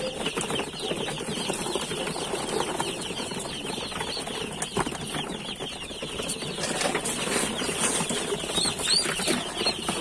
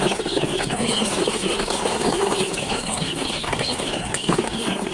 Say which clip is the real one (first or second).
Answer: first